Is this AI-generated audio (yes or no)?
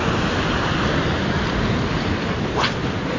no